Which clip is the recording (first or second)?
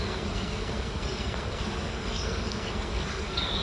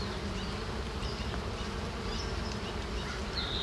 second